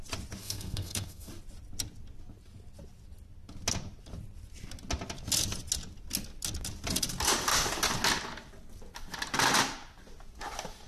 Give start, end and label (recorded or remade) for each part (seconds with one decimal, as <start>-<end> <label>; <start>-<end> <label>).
0.0-0.4 recorded; 0.4-1.3 remade; 1.3-10.9 recorded